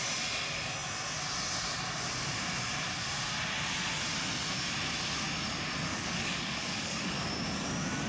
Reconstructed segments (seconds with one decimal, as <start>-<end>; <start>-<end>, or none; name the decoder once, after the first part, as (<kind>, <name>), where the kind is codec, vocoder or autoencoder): 5.9-7.3 (codec, DAC)